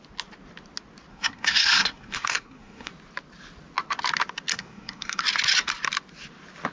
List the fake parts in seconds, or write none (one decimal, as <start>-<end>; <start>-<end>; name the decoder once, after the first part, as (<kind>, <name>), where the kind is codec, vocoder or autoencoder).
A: 1.1-2.9 (codec, SNAC); 4.5-5.2